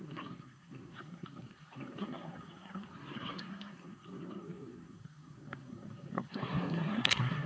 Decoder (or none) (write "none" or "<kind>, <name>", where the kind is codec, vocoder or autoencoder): codec, SNAC